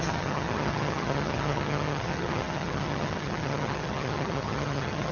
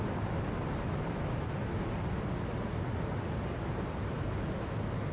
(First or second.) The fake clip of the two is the first